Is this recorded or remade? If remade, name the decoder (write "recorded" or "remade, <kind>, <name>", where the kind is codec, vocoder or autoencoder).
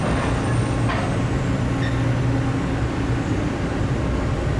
recorded